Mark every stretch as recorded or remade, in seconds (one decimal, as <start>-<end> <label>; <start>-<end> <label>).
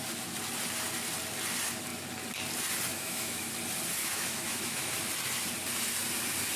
0.0-2.9 recorded; 2.9-3.5 remade; 3.5-4.0 recorded; 4.0-5.0 remade; 5.0-6.6 recorded